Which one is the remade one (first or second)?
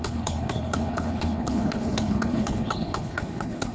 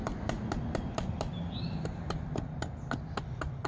first